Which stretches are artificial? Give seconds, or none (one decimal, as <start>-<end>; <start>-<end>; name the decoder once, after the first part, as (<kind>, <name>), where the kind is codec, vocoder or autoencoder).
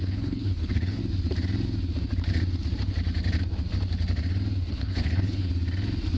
0.0-1.0 (codec, HILCodec); 4.7-5.5